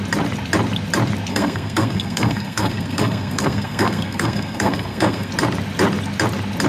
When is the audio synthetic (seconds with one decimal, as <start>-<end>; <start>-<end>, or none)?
1.3-5.3